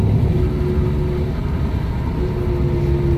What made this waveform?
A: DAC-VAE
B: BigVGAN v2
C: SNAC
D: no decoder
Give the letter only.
D